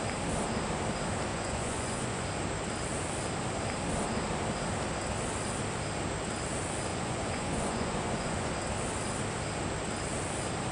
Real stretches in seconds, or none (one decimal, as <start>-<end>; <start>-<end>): 0.0-1.3; 2.3-6.9; 8.5-10.7